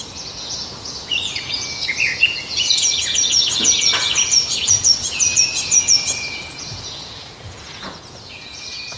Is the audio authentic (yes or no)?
no